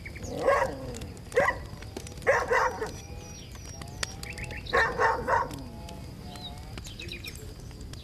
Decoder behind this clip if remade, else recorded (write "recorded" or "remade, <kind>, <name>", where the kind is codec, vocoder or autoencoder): recorded